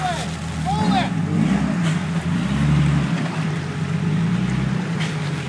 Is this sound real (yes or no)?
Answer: yes